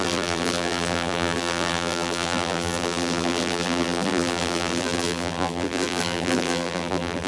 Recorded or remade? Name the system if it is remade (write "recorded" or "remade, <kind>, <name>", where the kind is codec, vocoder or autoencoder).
remade, vocoder, BigVGAN v2